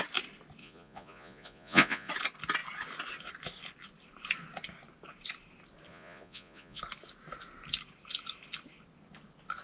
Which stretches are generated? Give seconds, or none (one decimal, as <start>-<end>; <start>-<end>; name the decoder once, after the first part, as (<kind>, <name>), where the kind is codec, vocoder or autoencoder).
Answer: 0.6-2.1 (vocoder, Vocos); 5.9-6.8